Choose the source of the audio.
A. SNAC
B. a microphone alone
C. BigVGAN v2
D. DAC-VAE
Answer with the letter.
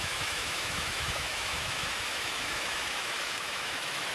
D